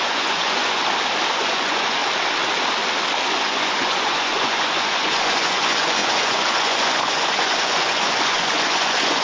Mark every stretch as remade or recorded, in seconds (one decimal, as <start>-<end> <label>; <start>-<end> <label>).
0.0-0.8 remade; 0.8-1.3 recorded; 1.3-2.0 remade; 2.0-3.3 recorded; 3.3-9.2 remade